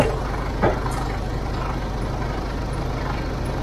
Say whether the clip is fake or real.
real